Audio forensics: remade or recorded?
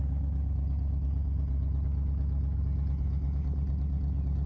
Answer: recorded